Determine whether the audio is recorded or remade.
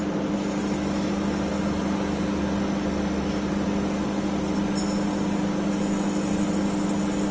recorded